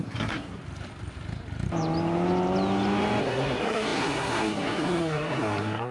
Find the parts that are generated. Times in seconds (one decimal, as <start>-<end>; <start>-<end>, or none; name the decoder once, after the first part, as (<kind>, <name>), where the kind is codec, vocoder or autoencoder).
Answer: 0.0-0.6 (codec, SNAC); 3.2-5.9